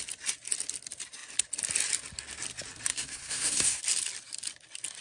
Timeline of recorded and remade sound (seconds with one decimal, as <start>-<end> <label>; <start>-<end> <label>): 0.0-2.9 recorded; 2.9-3.8 remade; 3.8-5.0 recorded